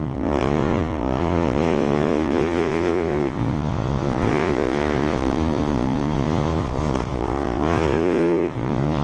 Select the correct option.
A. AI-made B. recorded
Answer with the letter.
A